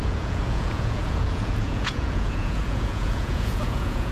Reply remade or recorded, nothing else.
remade